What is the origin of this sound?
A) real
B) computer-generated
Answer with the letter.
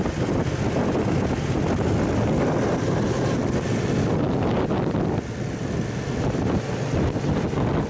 A